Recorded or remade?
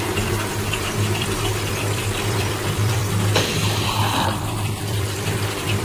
remade